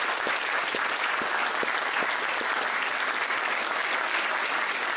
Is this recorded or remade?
recorded